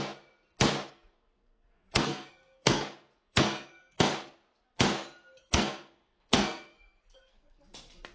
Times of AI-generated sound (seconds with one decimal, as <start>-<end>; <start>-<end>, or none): 0.9-4.1; 5.4-7.6